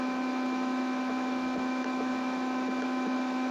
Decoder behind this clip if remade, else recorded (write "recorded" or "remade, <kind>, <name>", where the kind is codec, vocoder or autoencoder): remade, autoencoder, DAC-VAE